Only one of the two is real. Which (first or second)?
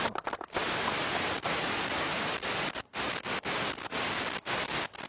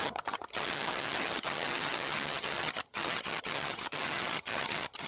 first